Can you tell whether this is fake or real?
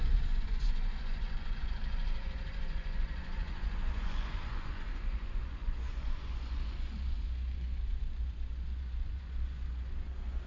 fake